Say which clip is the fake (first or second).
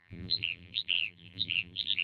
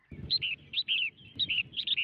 first